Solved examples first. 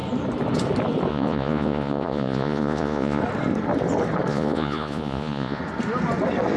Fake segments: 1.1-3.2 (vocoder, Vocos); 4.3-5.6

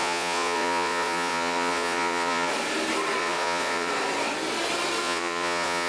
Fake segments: 0.0-2.5 (vocoder, Vocos); 3.2-3.9; 5.0-5.9

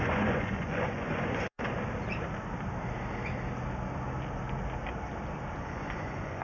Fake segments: 0.0-1.7 (vocoder, Vocos); 5.5-6.4

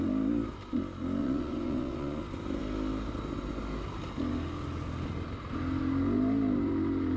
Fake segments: 1.2-2.2 (vocoder, Vocos)

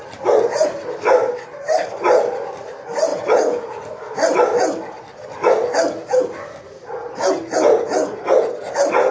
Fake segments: 3.1-3.7 (vocoder, Vocos)

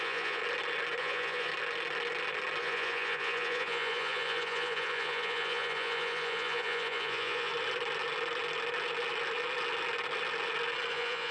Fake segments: 0.0-0.4 (vocoder, Vocos); 1.0-1.5; 2.6-7.5; 10.9-11.3